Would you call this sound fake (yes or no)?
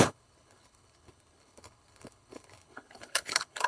yes